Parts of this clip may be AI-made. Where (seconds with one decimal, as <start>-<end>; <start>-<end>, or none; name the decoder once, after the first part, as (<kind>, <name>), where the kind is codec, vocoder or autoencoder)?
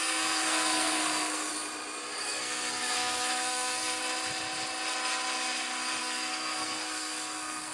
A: 0.0-1.5 (codec, SNAC); 2.2-4.0; 6.0-7.7